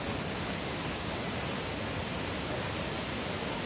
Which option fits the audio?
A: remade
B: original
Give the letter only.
B